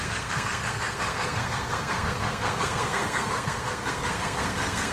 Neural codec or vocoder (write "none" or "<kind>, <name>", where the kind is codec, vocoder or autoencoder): codec, SNAC